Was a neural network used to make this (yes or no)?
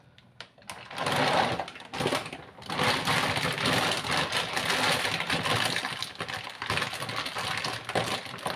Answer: no